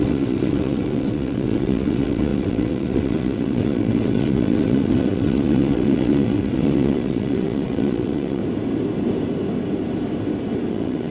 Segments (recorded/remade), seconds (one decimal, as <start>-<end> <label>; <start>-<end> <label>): 0.0-8.4 remade; 8.4-10.7 recorded; 10.7-11.1 remade